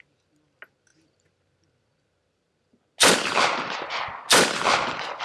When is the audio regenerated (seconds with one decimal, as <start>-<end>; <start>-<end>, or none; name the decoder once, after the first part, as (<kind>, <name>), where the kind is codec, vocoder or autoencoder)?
none